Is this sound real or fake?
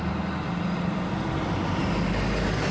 real